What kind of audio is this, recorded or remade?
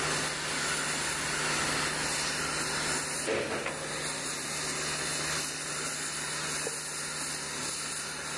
recorded